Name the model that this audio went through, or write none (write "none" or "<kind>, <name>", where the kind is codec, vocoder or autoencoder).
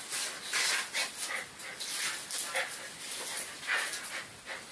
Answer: none